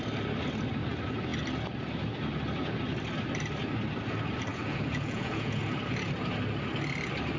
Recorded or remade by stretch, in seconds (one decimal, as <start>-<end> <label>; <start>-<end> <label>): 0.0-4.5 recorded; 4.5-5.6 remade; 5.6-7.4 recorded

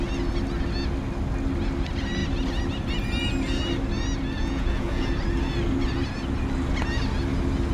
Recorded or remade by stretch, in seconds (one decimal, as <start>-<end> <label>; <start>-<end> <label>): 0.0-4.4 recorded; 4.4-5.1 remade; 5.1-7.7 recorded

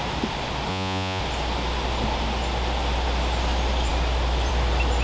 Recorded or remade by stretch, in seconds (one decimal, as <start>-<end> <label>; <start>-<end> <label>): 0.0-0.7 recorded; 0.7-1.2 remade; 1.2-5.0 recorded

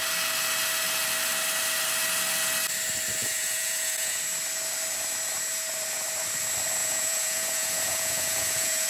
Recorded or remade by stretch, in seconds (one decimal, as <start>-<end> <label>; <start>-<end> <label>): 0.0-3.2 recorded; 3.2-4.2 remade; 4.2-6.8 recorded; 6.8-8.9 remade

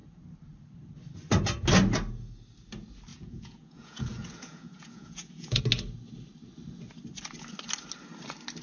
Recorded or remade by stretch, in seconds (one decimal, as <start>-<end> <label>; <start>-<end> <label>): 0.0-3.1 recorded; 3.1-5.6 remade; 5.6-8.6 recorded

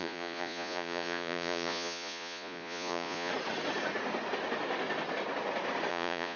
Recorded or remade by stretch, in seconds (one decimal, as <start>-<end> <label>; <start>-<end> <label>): 0.0-3.3 remade; 3.3-5.9 recorded; 5.9-6.4 remade